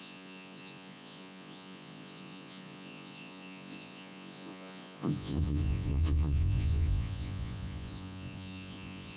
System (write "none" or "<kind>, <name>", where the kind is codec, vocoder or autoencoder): vocoder, Vocos